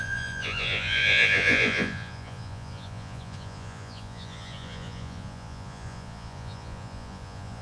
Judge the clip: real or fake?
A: fake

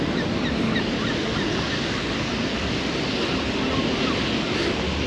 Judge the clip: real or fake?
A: real